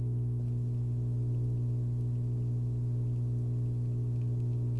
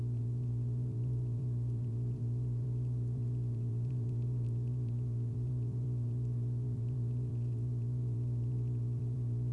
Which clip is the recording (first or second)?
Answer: first